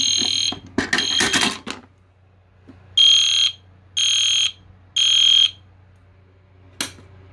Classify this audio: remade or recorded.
recorded